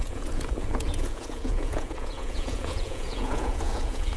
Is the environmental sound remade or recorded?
remade